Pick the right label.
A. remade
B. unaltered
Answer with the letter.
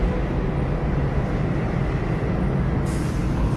B